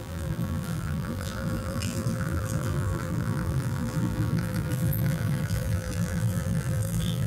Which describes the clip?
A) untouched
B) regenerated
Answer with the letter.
B